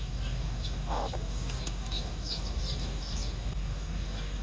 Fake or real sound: fake